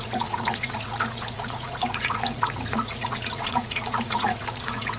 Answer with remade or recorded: remade